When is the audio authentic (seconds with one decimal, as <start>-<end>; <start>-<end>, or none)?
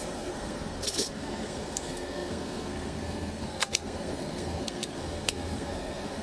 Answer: none